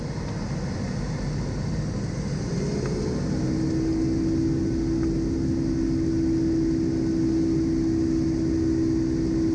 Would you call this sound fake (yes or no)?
no